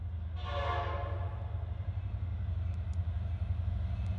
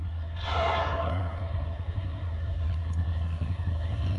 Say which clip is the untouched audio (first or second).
first